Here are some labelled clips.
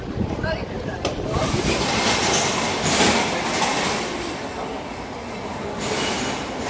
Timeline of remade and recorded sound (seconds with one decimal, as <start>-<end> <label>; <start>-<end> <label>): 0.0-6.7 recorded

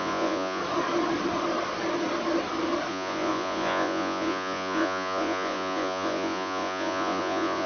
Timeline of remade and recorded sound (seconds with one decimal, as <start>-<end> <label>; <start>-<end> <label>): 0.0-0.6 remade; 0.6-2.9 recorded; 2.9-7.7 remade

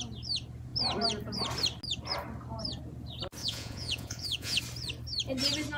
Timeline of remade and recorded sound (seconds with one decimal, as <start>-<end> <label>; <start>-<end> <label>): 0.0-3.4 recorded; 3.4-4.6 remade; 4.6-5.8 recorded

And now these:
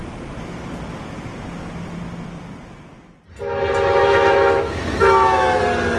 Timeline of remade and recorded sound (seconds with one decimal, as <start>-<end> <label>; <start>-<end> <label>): 0.0-4.0 recorded; 4.0-5.6 remade; 5.6-6.0 recorded

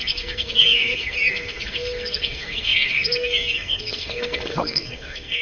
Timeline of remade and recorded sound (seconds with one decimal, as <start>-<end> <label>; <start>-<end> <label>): 0.0-5.4 remade